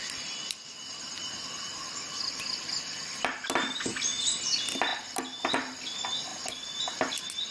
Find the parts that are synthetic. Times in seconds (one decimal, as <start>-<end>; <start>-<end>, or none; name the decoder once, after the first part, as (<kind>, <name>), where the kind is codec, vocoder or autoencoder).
none